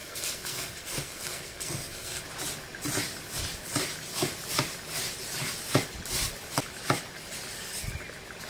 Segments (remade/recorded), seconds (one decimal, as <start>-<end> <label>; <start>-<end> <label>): 0.0-2.2 remade; 2.2-8.5 recorded